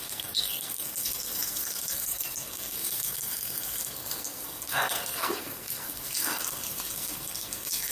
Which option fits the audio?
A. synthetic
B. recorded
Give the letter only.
A